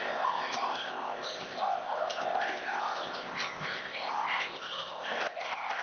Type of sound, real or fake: fake